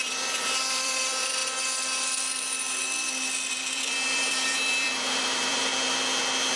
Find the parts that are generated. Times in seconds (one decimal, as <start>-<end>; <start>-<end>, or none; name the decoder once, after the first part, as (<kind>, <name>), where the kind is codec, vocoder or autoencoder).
0.0-1.4 (vocoder, BigVGAN v2); 3.5-5.7